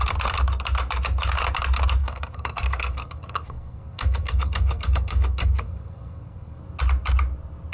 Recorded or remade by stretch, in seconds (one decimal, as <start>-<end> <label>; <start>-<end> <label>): 0.0-2.0 recorded; 2.0-6.6 remade; 6.6-7.7 recorded